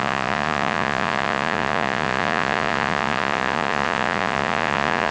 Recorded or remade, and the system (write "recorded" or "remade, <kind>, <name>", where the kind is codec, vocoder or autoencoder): remade, vocoder, Vocos